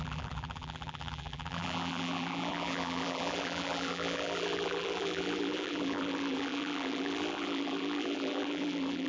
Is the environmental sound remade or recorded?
remade